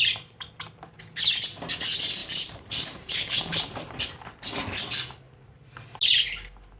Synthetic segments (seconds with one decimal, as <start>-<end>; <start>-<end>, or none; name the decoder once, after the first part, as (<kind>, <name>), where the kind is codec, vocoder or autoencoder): 2.2-3.9 (vocoder, BigVGAN v2)